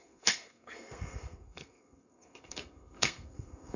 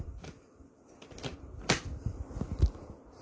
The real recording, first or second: second